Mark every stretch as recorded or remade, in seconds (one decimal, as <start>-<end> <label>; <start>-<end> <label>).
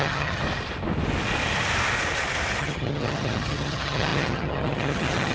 0.0-0.4 remade; 0.4-2.6 recorded; 2.6-5.3 remade